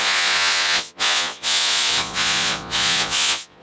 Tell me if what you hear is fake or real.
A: fake